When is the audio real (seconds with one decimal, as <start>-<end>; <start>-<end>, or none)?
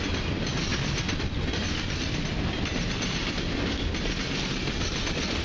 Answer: 0.0-5.4